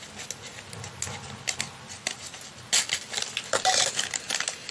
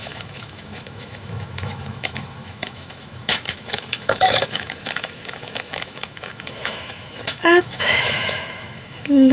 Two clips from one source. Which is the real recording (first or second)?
first